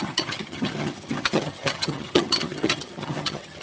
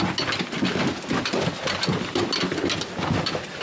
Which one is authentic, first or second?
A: second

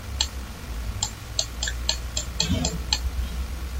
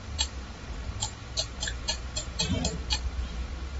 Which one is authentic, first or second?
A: first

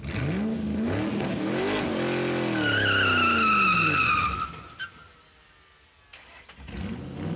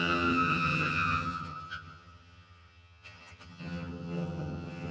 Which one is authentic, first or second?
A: first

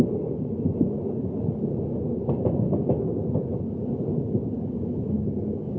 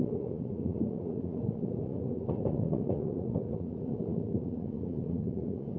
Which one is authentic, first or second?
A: first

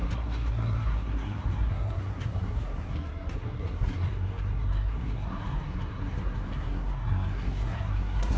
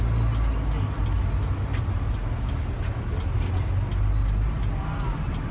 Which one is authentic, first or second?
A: second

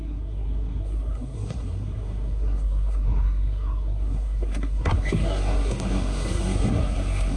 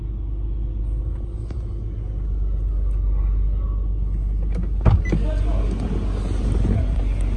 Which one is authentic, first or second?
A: second